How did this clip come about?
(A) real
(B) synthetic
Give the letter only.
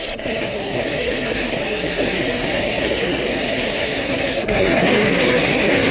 B